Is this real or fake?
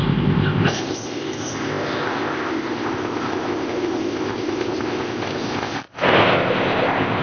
fake